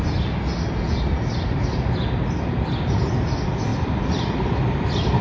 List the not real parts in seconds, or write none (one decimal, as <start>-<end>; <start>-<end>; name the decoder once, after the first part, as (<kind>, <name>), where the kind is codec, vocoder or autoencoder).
none